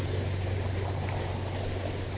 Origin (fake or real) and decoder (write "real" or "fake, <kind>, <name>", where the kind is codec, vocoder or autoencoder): real